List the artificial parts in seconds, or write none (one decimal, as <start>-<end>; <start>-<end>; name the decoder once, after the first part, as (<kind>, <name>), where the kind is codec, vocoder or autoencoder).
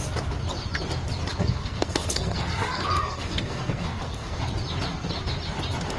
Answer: 1.4-4.4 (codec, SNAC)